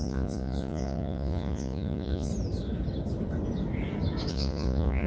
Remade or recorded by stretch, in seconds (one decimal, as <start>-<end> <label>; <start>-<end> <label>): 0.0-2.3 remade; 2.3-4.3 recorded; 4.3-5.1 remade